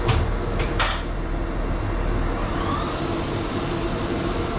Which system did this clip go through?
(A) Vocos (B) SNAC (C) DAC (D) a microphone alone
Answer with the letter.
D